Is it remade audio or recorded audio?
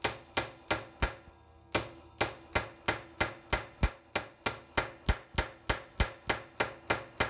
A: recorded